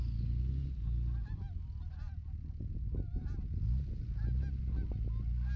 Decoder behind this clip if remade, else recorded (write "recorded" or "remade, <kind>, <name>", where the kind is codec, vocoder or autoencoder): recorded